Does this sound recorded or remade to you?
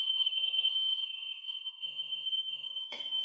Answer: remade